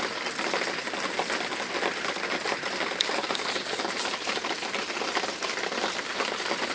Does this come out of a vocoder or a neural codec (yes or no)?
no